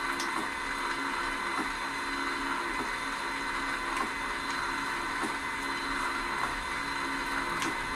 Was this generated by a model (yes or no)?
no